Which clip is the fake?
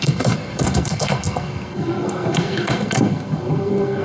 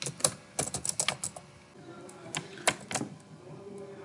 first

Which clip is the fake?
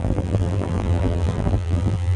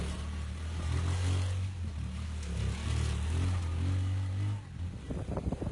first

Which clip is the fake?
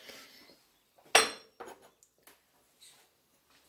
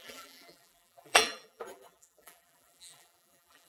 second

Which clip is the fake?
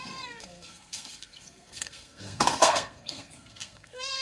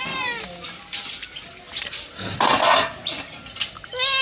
first